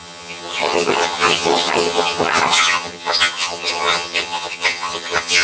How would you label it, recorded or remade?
remade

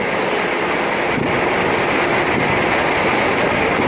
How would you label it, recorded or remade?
recorded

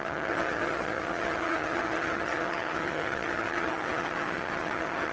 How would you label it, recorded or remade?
remade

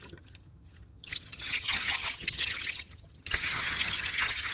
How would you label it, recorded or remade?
remade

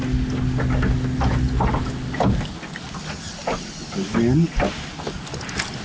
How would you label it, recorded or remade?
recorded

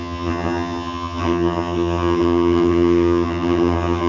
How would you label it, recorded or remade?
remade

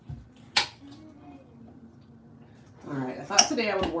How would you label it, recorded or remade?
recorded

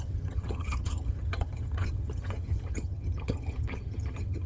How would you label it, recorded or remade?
remade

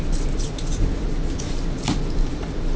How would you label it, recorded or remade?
recorded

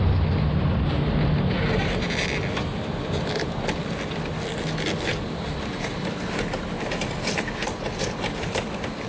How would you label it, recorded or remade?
recorded